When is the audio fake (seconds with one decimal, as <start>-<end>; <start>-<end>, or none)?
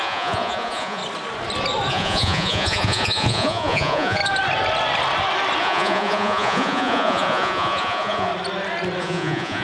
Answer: 0.0-1.0; 1.9-4.2; 5.6-8.3; 9.0-9.6